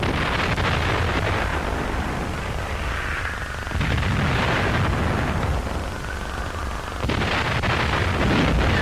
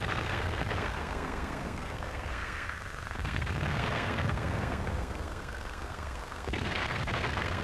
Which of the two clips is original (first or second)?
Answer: first